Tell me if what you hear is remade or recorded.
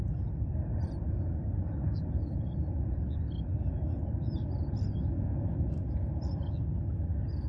recorded